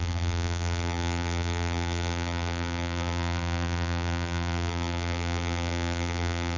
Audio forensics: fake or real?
fake